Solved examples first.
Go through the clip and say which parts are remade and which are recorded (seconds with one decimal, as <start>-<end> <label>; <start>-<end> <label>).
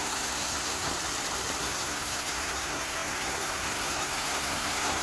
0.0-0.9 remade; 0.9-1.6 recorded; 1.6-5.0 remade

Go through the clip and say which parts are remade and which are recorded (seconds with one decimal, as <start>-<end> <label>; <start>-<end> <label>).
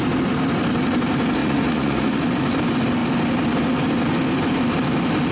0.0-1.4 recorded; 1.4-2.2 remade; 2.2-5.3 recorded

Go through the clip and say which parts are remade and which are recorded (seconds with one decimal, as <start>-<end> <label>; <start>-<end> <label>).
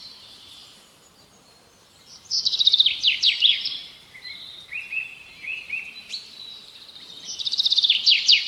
0.0-8.5 remade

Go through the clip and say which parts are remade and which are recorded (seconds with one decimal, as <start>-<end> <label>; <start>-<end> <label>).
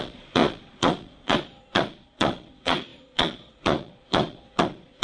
0.0-5.0 remade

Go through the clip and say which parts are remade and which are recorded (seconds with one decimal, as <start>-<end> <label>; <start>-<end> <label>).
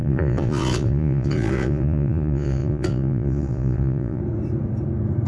0.0-4.2 remade; 4.2-5.3 recorded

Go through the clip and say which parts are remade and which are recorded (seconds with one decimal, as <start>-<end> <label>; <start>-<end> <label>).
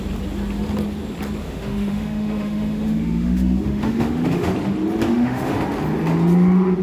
0.0-1.4 recorded; 1.4-4.5 remade; 4.5-5.1 recorded; 5.1-5.6 remade; 5.6-6.8 recorded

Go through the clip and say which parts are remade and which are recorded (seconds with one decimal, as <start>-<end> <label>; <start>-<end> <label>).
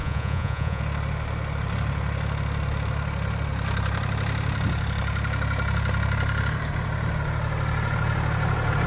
0.0-0.8 remade; 0.8-8.9 recorded